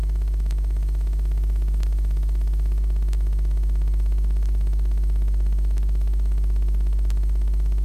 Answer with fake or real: fake